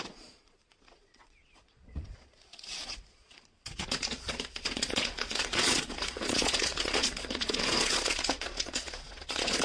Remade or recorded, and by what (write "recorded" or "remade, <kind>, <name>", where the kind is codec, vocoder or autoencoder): remade, vocoder, Vocos